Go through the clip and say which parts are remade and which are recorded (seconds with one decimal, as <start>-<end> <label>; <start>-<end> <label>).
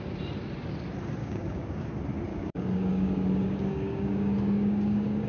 0.0-1.2 recorded; 1.2-1.9 remade; 1.9-2.3 recorded; 2.3-5.3 remade